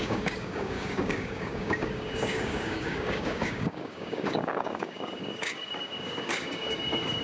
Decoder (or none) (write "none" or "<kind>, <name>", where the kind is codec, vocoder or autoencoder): codec, DAC